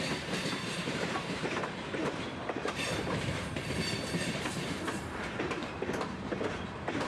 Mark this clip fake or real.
fake